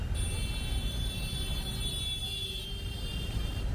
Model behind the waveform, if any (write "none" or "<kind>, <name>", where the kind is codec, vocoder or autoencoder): none